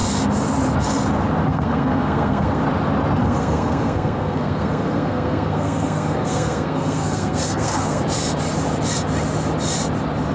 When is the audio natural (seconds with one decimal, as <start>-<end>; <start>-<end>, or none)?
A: 0.0-1.5; 2.6-3.2; 8.0-10.3